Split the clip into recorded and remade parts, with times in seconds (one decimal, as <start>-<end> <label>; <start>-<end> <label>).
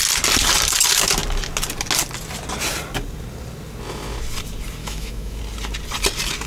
0.0-4.8 recorded; 4.8-5.4 remade; 5.4-6.5 recorded